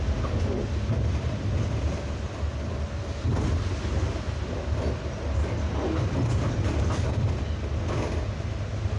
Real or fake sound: real